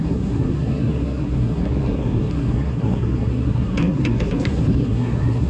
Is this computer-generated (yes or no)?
yes